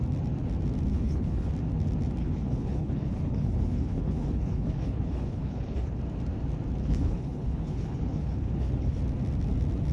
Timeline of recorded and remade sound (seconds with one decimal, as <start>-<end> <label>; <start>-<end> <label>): 0.0-0.9 recorded; 0.9-1.5 remade; 1.5-2.2 recorded; 2.2-6.0 remade; 6.0-6.8 recorded; 6.8-9.0 remade; 9.0-9.9 recorded